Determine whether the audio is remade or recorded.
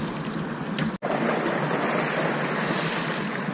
recorded